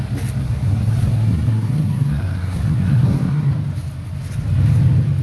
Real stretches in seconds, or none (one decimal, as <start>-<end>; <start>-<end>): 0.0-0.4; 3.5-5.2